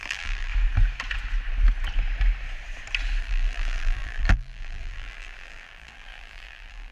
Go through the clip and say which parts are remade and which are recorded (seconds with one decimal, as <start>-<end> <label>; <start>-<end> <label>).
0.0-0.5 remade; 0.5-3.2 recorded; 3.2-6.9 remade